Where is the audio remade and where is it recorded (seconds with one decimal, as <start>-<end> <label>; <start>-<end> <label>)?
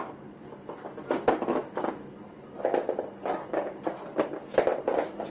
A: 0.0-4.7 recorded; 4.7-5.3 remade